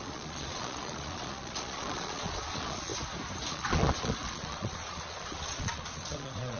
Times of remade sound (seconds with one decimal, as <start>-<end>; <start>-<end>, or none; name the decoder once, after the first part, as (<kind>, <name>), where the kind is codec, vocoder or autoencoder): 0.0-2.9 (vocoder, Vocos); 3.5-6.6